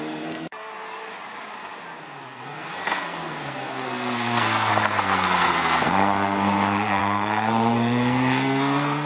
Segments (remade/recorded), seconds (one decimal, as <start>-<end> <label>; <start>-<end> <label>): 0.0-0.7 remade; 0.7-2.0 recorded; 2.0-9.1 remade